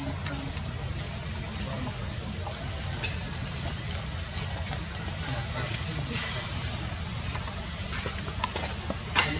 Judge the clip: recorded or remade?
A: recorded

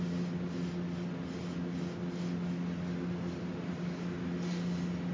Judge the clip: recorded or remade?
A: recorded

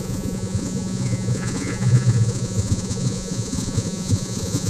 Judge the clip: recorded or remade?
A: remade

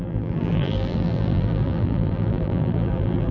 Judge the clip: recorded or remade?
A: remade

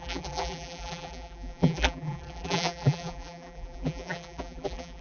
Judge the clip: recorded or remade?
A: remade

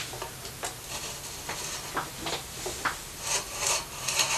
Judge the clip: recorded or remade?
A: recorded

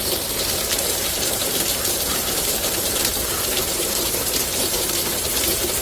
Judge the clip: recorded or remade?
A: remade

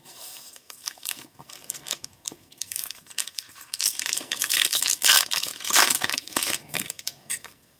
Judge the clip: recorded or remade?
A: remade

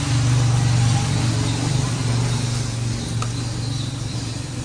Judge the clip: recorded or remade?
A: remade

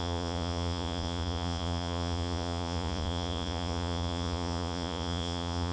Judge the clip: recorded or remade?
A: remade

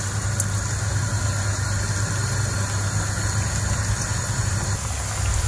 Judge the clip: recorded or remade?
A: recorded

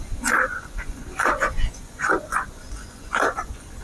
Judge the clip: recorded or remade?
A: remade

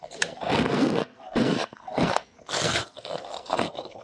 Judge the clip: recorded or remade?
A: remade